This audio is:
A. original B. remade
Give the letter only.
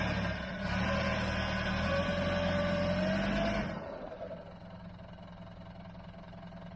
A